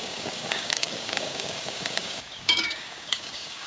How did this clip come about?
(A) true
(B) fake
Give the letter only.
B